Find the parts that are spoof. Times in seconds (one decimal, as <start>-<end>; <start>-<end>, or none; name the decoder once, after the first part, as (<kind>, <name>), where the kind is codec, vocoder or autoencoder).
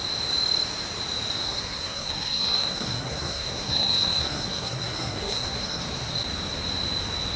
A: 1.4-5.8 (codec, SNAC)